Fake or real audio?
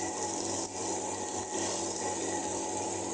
real